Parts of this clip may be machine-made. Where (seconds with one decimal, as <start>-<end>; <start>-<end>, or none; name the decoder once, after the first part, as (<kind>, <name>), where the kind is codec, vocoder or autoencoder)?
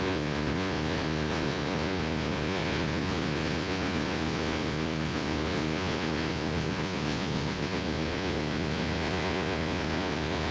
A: 0.0-10.5 (vocoder, Vocos)